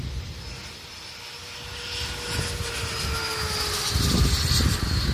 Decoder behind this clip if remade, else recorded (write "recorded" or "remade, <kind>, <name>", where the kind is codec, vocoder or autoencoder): recorded